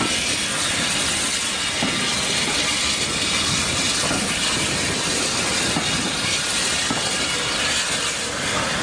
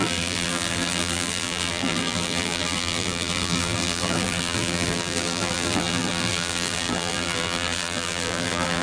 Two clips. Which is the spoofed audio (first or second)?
second